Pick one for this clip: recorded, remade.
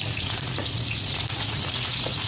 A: remade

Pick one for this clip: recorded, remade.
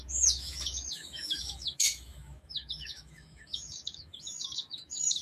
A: remade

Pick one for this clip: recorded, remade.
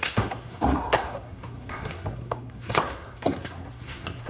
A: remade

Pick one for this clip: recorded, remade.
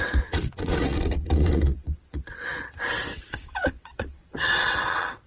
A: remade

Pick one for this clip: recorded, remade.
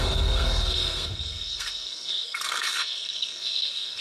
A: remade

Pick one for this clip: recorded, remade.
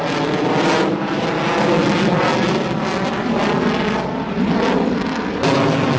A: recorded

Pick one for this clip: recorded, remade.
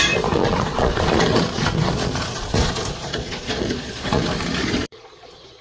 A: remade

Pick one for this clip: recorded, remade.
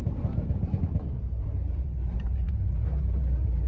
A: remade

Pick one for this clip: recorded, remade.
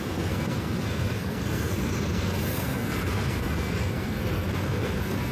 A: remade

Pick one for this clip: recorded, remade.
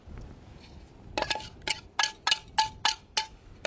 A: recorded